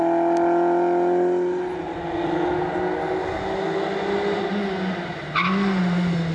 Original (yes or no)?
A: yes